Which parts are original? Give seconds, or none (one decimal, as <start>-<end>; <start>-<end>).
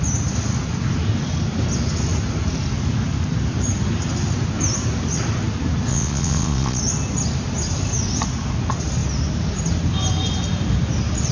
0.0-5.9; 6.8-11.3